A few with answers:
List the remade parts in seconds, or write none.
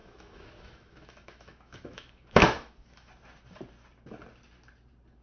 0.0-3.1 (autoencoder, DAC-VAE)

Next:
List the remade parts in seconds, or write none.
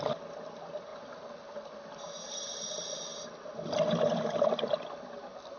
none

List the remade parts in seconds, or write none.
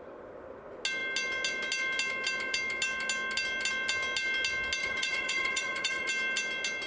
4.8-6.1 (vocoder, Vocos)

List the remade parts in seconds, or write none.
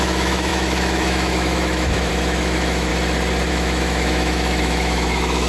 0.0-2.9 (autoencoder, DAC-VAE); 3.5-5.5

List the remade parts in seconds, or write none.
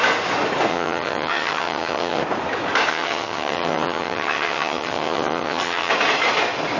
0.7-2.2 (vocoder, HiFi-GAN); 2.9-5.9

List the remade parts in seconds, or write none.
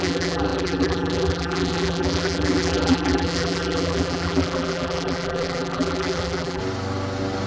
0.0-6.6 (vocoder, BigVGAN v2)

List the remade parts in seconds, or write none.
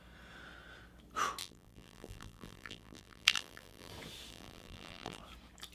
1.4-3.9 (vocoder, BigVGAN v2); 4.3-5.2